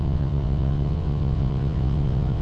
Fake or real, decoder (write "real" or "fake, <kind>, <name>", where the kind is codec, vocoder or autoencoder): fake, vocoder, WaveNeXt